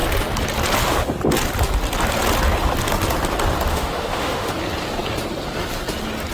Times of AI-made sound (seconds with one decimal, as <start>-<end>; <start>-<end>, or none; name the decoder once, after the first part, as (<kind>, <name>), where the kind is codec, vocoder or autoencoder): 3.7-4.5 (autoencoder, DAC-VAE)